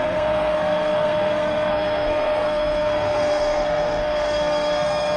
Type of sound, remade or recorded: remade